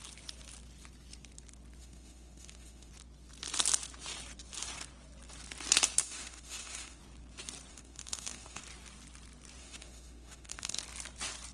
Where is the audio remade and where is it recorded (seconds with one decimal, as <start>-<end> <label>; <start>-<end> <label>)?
0.0-1.8 recorded; 1.8-2.9 remade; 2.9-6.0 recorded; 6.0-7.0 remade; 7.0-7.7 recorded; 7.7-8.6 remade; 8.6-9.6 recorded; 9.6-10.8 remade; 10.8-11.5 recorded